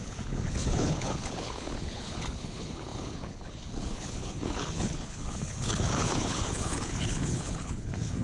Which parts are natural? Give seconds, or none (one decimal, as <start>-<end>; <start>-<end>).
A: none